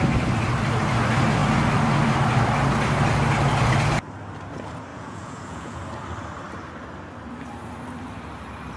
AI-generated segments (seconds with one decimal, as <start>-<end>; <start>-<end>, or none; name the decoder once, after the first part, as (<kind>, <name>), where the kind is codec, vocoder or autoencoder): 4.9-5.8 (vocoder, Vocos)